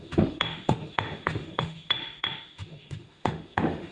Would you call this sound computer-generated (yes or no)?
yes